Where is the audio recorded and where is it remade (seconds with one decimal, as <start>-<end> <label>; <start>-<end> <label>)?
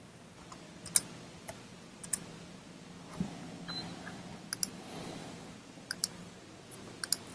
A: 0.0-5.2 recorded; 5.2-6.4 remade; 6.4-7.3 recorded